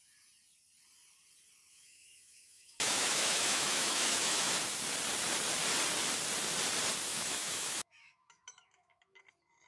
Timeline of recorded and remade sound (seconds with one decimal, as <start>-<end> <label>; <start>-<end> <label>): 0.0-1.7 recorded; 1.7-4.5 remade; 4.5-7.1 recorded; 7.1-9.2 remade; 9.2-9.7 recorded

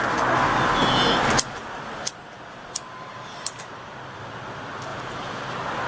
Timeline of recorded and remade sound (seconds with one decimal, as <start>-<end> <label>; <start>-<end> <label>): 0.0-4.9 recorded; 4.9-5.4 remade; 5.4-5.9 recorded

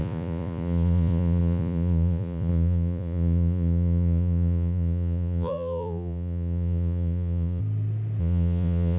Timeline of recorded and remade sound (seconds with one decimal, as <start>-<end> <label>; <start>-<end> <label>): 0.0-7.6 remade; 7.6-8.2 recorded; 8.2-9.0 remade